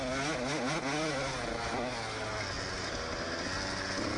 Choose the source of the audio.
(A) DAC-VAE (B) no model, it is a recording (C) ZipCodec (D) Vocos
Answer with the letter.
B